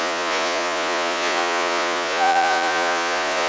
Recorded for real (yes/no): no